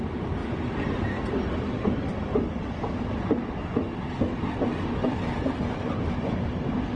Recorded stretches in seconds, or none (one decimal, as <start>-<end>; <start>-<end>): 0.0-7.0